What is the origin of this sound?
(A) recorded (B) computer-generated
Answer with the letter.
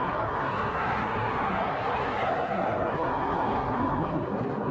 B